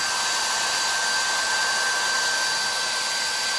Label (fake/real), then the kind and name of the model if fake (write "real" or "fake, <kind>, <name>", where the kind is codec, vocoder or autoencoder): real